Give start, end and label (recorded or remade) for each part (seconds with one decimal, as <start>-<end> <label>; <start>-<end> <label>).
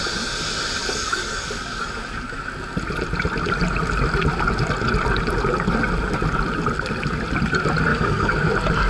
0.0-0.8 recorded; 0.8-2.4 remade; 2.4-7.9 recorded; 7.9-8.5 remade; 8.5-8.9 recorded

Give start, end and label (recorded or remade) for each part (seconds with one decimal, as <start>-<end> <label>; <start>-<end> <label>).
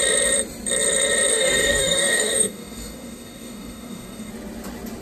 0.0-1.3 recorded; 1.3-4.3 remade; 4.3-5.0 recorded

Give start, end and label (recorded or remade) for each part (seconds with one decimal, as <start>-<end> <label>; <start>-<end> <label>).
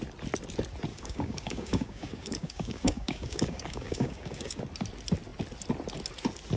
0.0-0.9 recorded; 0.9-4.6 remade; 4.6-6.6 recorded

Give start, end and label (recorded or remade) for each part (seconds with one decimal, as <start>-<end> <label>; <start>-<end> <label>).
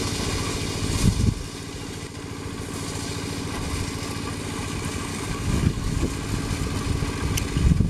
0.0-5.1 recorded; 5.1-6.1 remade; 6.1-7.9 recorded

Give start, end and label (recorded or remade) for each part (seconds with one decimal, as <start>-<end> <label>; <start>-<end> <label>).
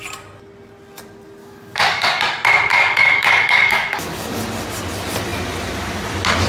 0.0-1.4 recorded; 1.4-2.2 remade; 2.2-2.7 recorded; 2.7-4.4 remade; 4.4-6.5 recorded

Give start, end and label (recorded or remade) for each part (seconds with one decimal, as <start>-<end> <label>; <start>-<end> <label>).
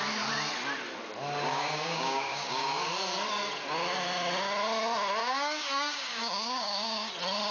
0.0-1.5 recorded; 1.5-2.9 remade; 2.9-5.2 recorded; 5.2-7.1 remade; 7.1-7.5 recorded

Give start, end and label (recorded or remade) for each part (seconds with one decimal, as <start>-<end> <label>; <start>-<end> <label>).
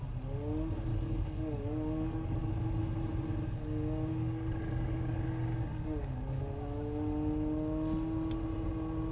0.0-0.9 recorded; 0.9-2.5 remade; 2.5-4.1 recorded; 4.1-5.2 remade; 5.2-5.7 recorded; 5.7-6.4 remade; 6.4-9.1 recorded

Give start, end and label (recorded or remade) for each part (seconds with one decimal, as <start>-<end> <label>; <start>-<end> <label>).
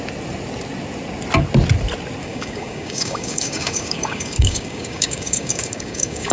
0.0-2.2 recorded; 2.2-6.3 remade